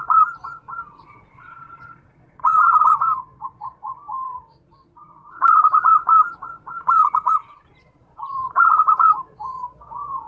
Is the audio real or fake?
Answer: fake